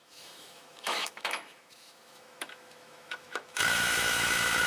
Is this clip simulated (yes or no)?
yes